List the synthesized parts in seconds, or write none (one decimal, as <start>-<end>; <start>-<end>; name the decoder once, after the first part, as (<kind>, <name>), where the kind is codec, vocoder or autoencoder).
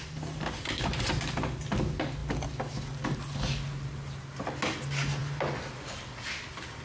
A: none